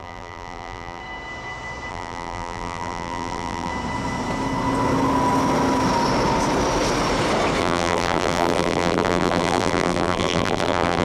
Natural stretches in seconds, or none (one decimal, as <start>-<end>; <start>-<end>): 1.0-1.9; 3.7-7.6